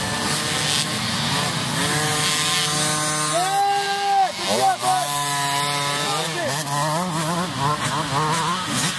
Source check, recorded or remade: recorded